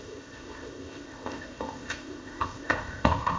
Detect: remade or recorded remade